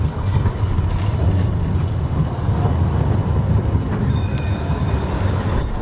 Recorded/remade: recorded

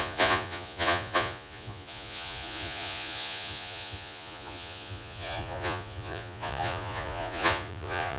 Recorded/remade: remade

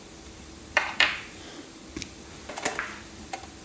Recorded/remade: remade